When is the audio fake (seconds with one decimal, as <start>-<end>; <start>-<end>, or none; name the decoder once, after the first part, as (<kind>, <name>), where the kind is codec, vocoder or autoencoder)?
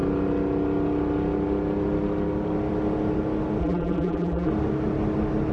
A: 3.6-4.5 (vocoder, BigVGAN v2)